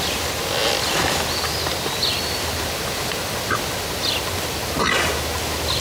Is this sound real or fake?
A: real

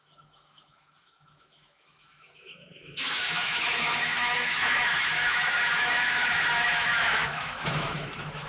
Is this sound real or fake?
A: fake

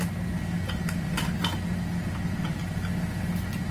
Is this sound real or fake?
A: real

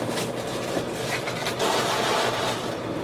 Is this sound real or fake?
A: real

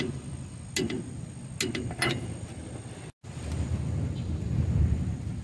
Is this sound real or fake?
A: real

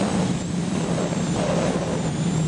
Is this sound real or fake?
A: real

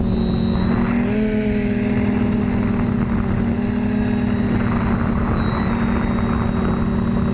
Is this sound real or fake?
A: real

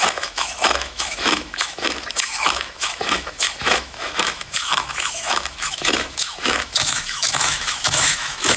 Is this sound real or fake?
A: fake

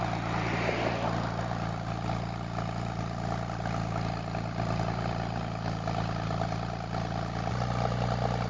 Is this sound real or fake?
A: real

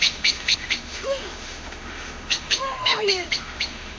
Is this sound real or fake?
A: fake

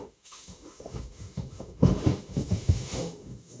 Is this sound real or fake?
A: fake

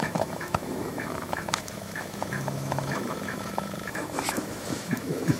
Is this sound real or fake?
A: fake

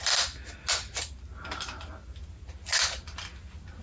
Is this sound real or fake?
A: real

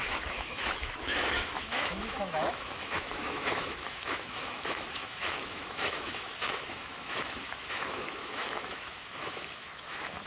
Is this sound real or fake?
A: fake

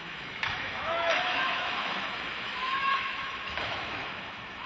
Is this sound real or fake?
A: fake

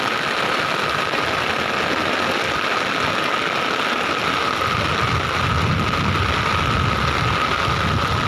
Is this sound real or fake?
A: real